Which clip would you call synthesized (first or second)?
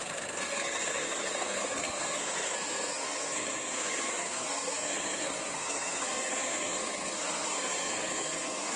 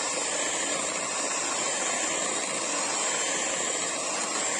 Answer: first